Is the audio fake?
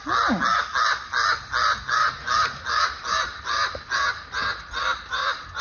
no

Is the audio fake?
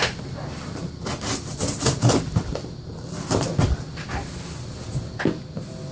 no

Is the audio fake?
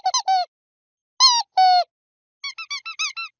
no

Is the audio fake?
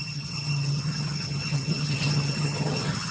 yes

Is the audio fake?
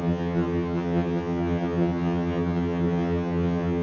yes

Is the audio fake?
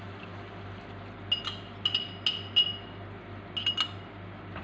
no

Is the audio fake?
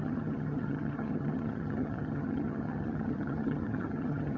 yes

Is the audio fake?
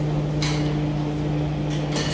no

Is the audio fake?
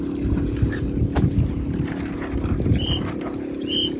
no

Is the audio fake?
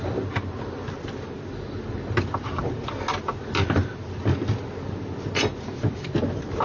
no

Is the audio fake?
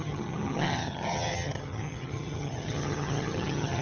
yes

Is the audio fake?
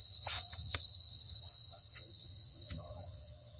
yes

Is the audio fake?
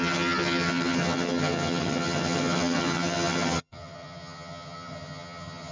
yes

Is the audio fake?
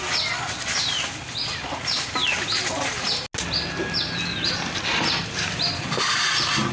no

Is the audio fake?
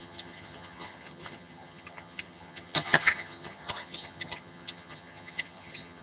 yes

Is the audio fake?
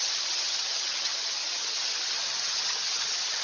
yes